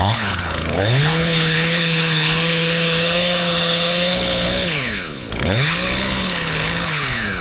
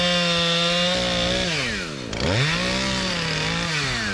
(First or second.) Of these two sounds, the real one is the second